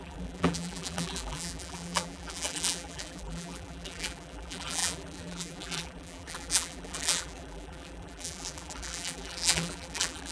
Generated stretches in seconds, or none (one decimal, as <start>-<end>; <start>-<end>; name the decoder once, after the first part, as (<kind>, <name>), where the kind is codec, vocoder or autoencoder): 0.0-10.3 (vocoder, BigVGAN v2)